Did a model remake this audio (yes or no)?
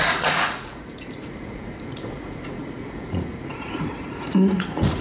yes